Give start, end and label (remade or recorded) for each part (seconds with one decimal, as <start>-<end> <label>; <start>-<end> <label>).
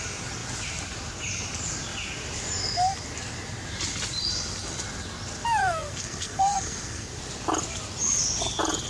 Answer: 0.0-5.6 recorded; 5.6-7.2 remade; 7.2-8.9 recorded